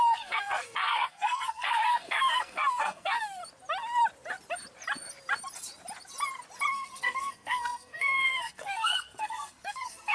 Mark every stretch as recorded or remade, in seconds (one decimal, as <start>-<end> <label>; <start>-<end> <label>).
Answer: 0.0-3.4 remade; 3.4-6.7 recorded; 6.7-10.1 remade